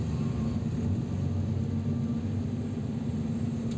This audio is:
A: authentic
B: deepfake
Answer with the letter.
A